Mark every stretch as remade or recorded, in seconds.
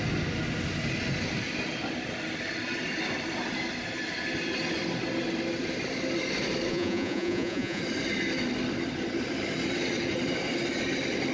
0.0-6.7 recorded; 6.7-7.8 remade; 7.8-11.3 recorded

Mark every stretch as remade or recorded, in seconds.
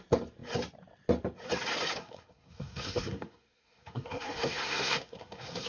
0.0-2.0 recorded; 2.0-5.7 remade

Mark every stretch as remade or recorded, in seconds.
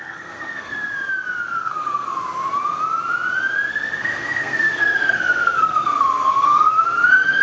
0.0-0.9 remade; 0.9-1.6 recorded; 1.6-2.2 remade; 2.2-3.7 recorded; 3.7-7.4 remade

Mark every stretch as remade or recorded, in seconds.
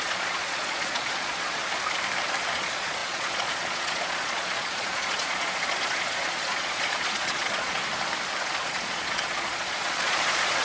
0.0-1.6 remade; 1.6-2.5 recorded; 2.5-7.8 remade; 7.8-8.4 recorded; 8.4-10.6 remade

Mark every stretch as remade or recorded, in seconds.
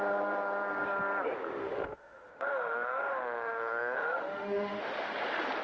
0.0-1.6 recorded; 1.6-4.8 remade; 4.8-5.6 recorded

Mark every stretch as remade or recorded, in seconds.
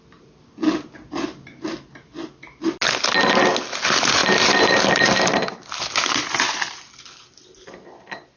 0.0-8.4 recorded